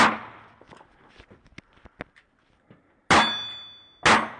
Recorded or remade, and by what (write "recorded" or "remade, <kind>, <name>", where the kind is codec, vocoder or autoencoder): recorded